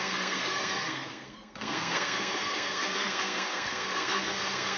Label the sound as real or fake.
fake